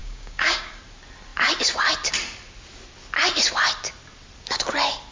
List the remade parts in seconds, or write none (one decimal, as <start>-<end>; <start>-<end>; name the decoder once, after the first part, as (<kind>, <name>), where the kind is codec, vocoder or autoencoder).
0.0-0.8 (codec, DAC)

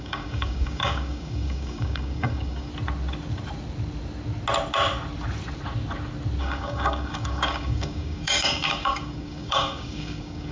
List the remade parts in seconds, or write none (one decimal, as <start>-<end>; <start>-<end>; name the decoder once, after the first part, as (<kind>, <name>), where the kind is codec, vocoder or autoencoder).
0.0-2.7 (codec, DAC); 6.4-10.5

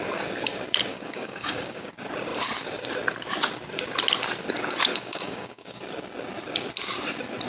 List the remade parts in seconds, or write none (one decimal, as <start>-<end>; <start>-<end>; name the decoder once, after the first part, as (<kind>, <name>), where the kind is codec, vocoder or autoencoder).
0.9-1.9 (codec, DAC); 4.9-5.8

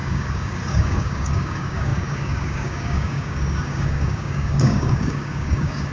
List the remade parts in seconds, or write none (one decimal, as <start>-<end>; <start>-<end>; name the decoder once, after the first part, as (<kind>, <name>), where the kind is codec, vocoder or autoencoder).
0.0-5.9 (codec, DAC)

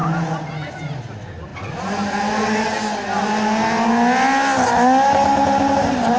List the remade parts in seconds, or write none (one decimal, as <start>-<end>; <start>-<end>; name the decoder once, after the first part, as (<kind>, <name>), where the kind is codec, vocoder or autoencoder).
none

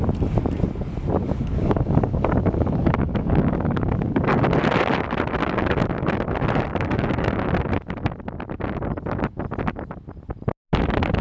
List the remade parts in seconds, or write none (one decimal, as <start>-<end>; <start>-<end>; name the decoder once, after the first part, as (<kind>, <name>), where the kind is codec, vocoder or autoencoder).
1.2-4.4 (codec, DAC); 5.4-6.2; 6.7-7.3

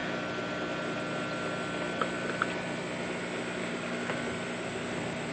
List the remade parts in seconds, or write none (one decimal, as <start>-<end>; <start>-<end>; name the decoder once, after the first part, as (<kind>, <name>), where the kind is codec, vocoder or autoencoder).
3.6-4.2 (codec, DAC)

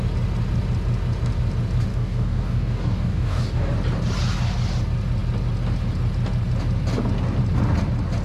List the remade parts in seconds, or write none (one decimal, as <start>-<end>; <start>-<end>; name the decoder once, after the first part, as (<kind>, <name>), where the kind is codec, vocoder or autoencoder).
1.9-3.7 (codec, DAC)